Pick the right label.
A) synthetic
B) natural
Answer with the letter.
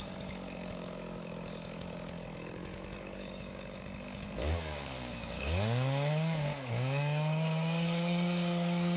A